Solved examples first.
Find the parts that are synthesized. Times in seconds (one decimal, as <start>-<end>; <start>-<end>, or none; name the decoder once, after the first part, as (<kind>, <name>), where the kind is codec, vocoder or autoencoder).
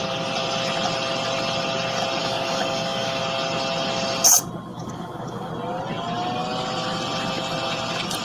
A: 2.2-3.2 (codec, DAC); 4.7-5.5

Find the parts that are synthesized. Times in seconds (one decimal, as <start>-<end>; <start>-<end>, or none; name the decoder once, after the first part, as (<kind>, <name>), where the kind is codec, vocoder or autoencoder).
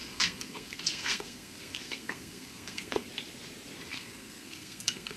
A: 0.0-3.1 (codec, SNAC); 3.9-5.2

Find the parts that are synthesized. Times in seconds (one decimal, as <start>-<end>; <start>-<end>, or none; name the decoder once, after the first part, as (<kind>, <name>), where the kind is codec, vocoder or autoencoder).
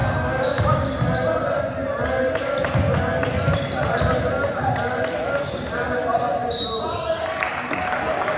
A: 0.0-0.6 (codec, DAC); 7.5-8.4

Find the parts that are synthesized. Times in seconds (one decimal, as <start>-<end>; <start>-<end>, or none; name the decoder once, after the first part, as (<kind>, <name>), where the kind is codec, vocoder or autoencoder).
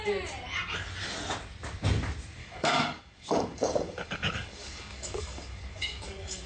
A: 2.4-6.5 (codec, DAC)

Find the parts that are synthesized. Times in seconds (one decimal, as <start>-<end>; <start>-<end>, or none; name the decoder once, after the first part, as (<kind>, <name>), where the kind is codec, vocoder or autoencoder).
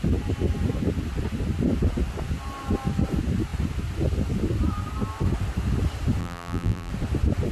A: 6.2-6.9 (vocoder, BigVGAN v2)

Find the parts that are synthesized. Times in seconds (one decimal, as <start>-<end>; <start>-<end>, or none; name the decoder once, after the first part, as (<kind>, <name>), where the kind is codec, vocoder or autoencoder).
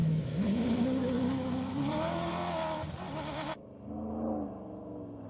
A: 0.0-0.6 (autoencoder, DAC-VAE)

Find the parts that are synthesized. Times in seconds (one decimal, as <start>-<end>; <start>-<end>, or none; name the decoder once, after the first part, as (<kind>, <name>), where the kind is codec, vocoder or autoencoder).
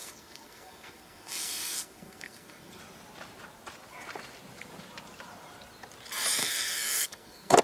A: 0.0-2.8 (codec, SNAC); 6.4-7.6